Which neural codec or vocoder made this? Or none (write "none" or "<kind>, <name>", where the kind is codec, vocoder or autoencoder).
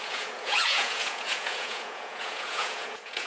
vocoder, Vocos